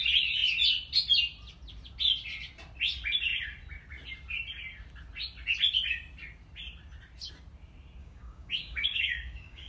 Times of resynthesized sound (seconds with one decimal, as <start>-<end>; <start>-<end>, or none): 8.0-9.7